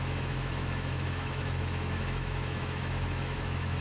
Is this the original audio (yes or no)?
no